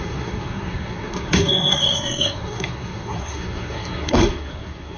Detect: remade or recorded remade